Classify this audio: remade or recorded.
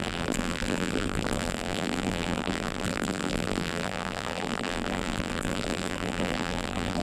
remade